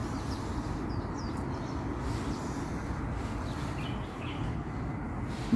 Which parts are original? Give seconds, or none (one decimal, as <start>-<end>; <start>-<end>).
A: 0.0-4.1; 4.7-5.6